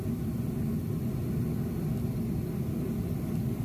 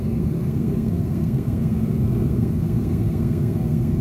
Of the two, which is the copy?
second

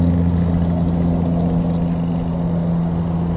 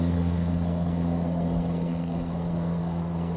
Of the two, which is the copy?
second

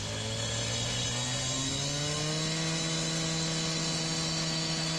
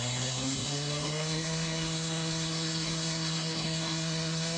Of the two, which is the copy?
second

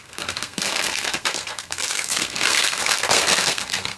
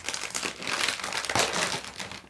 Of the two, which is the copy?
first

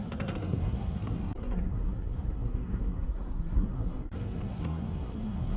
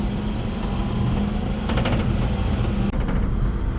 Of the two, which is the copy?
first